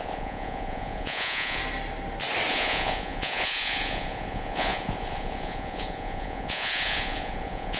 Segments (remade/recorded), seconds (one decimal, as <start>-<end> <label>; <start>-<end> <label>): 0.0-1.6 remade; 1.6-2.5 recorded; 2.5-7.8 remade